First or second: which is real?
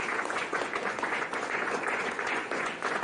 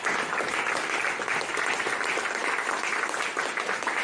second